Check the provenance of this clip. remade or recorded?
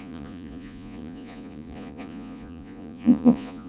remade